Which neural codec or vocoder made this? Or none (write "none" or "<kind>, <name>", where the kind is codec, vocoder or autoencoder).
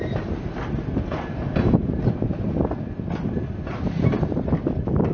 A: none